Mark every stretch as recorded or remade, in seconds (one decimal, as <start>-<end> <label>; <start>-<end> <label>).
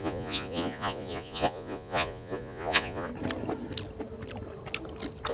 0.0-3.1 remade; 3.1-5.3 recorded